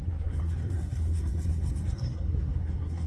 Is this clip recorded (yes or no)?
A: no